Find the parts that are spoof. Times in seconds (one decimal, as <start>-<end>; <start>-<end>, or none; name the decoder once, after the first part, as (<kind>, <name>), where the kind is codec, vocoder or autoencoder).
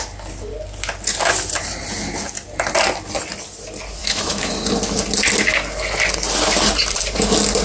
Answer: 4.0-4.5 (autoencoder, DAC-VAE)